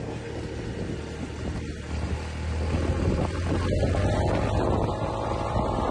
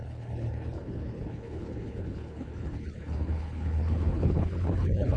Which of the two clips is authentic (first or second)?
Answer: first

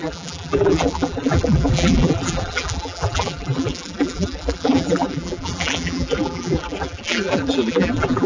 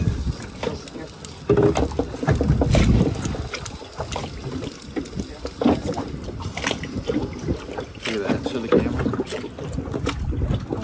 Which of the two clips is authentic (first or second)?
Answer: second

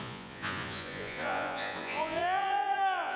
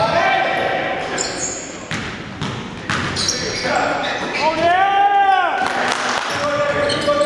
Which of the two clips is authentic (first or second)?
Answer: second